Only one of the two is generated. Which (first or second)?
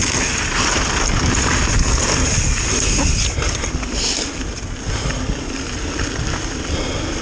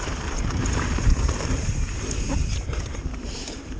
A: second